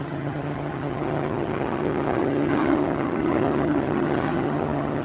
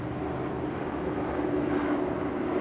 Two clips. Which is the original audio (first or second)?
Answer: second